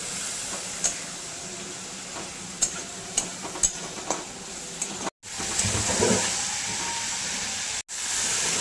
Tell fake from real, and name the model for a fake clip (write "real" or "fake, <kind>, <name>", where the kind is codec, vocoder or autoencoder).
real